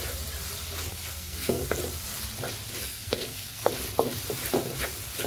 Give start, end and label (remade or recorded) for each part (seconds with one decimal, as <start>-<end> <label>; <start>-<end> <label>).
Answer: 0.0-0.9 recorded; 0.9-1.6 remade; 1.6-2.8 recorded; 2.8-3.7 remade; 3.7-5.3 recorded